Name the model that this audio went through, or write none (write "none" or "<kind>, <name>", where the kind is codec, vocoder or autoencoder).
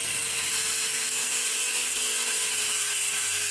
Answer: codec, SNAC